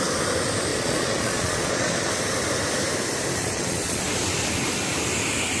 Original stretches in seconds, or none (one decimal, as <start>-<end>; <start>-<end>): 0.0-0.7; 2.1-3.4; 4.0-5.6